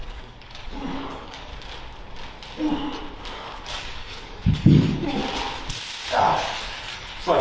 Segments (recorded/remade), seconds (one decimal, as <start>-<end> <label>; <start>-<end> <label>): 0.0-1.5 remade; 1.5-3.3 recorded; 3.3-5.2 remade; 5.2-6.2 recorded; 6.2-7.4 remade